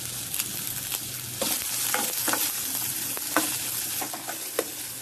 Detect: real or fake real